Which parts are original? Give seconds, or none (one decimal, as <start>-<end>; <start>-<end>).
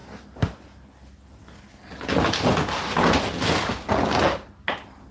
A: 0.0-5.1